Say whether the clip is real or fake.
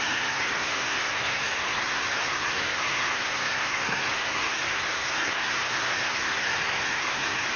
fake